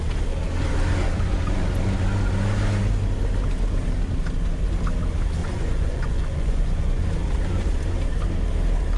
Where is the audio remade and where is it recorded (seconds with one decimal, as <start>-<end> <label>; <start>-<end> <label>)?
0.0-5.4 recorded; 5.4-7.1 remade; 7.1-9.0 recorded